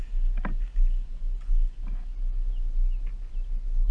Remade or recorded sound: recorded